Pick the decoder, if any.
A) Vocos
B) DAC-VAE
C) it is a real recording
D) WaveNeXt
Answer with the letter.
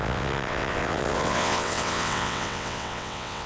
D